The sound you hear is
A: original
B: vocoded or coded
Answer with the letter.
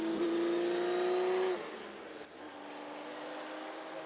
A